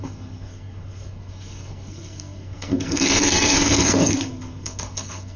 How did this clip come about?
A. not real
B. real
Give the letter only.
A